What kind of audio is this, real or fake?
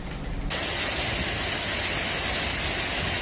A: real